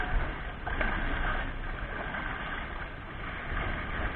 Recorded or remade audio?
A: recorded